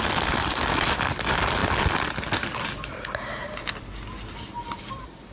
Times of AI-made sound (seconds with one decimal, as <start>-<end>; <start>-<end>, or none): none

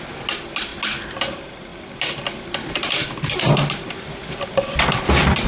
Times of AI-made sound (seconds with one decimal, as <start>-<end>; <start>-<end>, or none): 0.7-1.2; 1.7-5.0

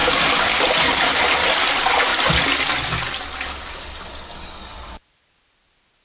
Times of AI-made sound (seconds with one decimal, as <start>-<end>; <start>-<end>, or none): 0.0-1.7; 4.7-5.5

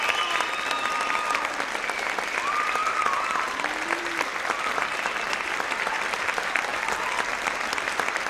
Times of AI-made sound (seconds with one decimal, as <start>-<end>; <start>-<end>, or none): 0.0-6.7; 7.3-8.3

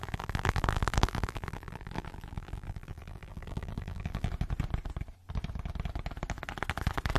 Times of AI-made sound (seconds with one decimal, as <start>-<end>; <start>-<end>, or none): 0.0-4.3

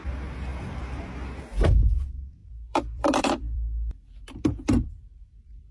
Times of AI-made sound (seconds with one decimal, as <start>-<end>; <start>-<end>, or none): 2.4-5.7